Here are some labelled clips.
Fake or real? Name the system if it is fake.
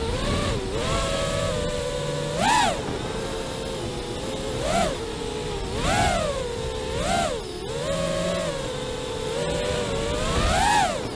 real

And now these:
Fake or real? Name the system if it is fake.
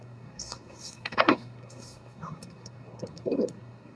fake, codec, SNAC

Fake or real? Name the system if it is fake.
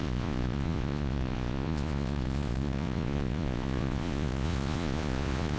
fake, vocoder, Vocos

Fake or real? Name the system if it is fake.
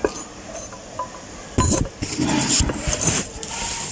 real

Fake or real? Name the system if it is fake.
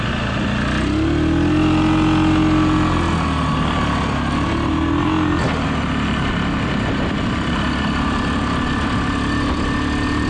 real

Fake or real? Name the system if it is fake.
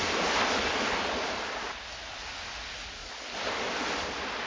real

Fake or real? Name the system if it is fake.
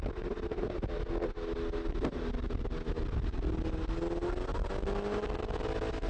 real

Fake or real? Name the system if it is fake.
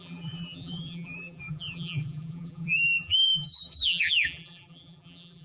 fake, vocoder, BigVGAN v2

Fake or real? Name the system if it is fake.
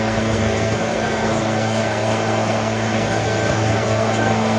fake, codec, SNAC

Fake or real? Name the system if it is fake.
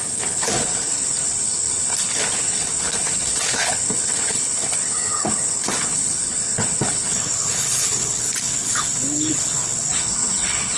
fake, codec, HILCodec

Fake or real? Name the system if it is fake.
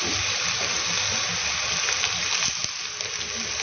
real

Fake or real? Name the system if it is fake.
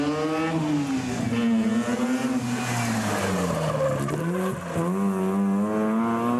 real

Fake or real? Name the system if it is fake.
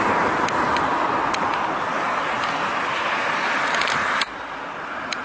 real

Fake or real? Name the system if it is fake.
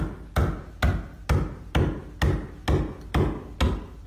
real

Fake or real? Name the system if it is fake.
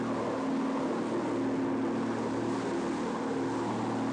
real